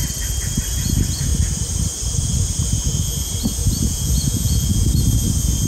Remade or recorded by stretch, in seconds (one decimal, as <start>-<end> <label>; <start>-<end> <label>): 0.0-3.6 recorded; 3.6-4.9 remade; 4.9-5.7 recorded